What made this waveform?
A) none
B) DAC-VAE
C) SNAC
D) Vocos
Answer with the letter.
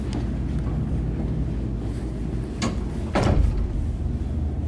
A